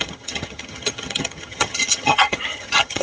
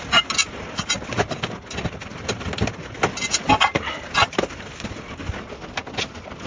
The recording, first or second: second